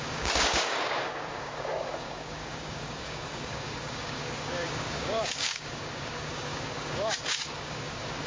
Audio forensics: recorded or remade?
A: remade